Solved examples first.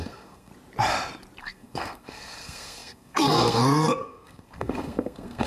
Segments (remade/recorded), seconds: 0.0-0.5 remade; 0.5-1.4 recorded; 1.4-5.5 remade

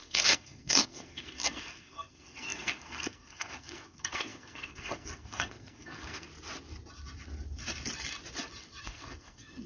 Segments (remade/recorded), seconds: 0.0-6.3 remade; 6.3-8.8 recorded; 8.8-9.7 remade

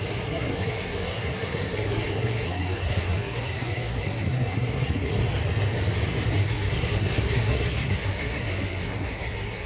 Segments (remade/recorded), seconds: 0.0-5.2 remade; 5.2-6.4 recorded; 6.4-9.7 remade

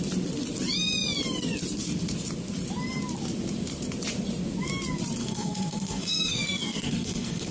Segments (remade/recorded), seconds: 0.0-5.2 recorded; 5.2-7.5 remade

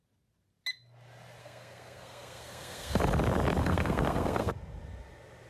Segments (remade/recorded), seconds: 0.0-1.4 recorded; 1.4-3.0 remade; 3.0-3.6 recorded; 3.6-4.5 remade; 4.5-5.5 recorded

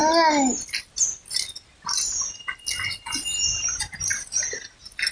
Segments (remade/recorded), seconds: 0.0-5.1 recorded